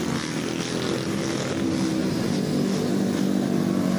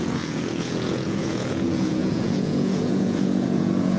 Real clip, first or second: first